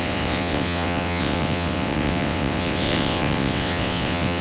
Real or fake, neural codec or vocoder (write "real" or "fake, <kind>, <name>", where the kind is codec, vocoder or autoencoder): fake, vocoder, WaveNeXt